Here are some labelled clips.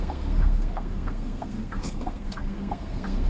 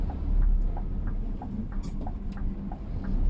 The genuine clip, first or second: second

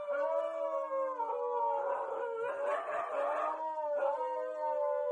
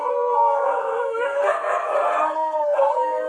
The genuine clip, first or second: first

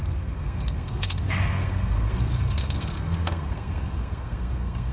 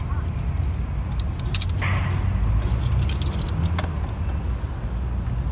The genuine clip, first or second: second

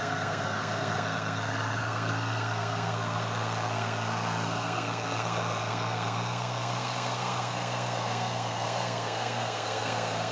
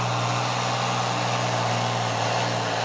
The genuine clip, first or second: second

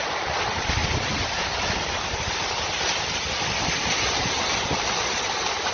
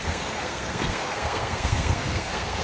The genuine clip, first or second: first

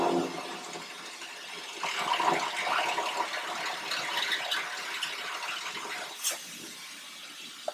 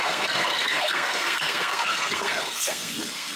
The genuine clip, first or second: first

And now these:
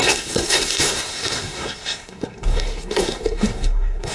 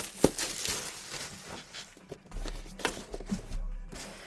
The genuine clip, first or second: second